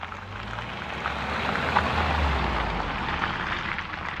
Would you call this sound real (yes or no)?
yes